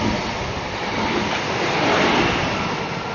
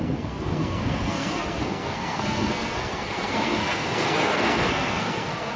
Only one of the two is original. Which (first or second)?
first